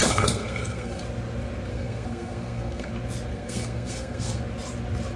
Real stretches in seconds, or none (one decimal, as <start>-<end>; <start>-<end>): 1.0-1.7; 2.9-3.3; 4.4-5.2